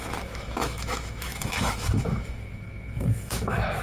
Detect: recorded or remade remade